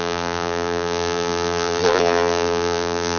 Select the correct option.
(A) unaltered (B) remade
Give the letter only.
B